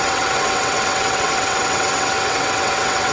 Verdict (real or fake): fake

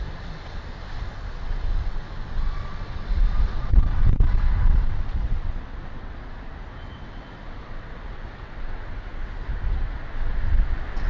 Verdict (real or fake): fake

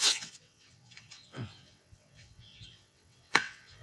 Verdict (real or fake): fake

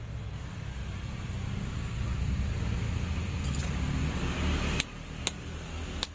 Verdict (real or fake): real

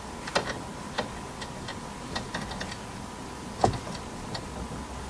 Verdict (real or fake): real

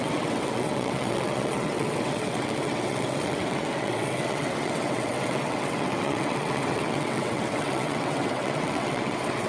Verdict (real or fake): fake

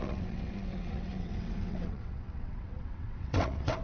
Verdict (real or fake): fake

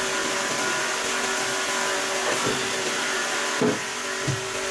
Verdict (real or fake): real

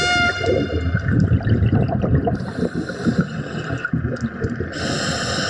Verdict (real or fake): real